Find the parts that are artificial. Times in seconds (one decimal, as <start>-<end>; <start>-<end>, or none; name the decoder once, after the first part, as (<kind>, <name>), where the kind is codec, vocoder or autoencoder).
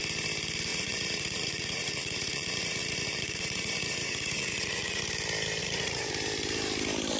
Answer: 0.7-5.0 (vocoder, Vocos); 5.6-6.1